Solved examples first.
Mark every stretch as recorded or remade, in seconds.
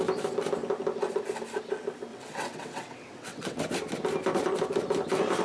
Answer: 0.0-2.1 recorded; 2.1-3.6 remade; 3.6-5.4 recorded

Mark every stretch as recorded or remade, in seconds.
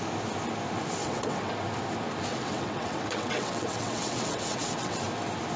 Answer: 0.0-1.0 recorded; 1.0-1.5 remade; 1.5-2.3 recorded; 2.3-5.0 remade; 5.0-5.6 recorded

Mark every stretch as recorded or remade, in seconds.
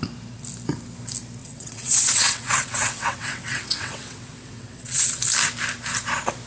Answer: 0.0-1.4 recorded; 1.4-5.2 remade; 5.2-6.5 recorded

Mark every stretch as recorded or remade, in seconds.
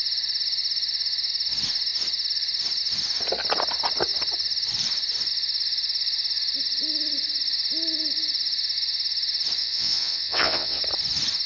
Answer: 0.0-9.6 recorded; 9.6-10.8 remade; 10.8-11.5 recorded